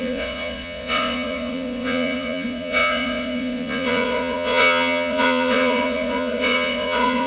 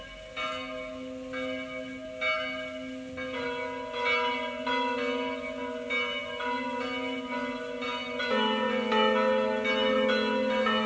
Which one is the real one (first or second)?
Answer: second